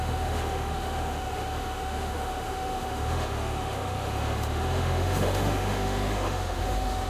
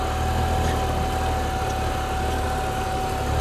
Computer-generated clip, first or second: first